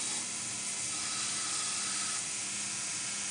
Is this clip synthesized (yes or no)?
no